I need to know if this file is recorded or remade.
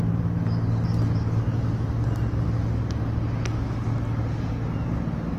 recorded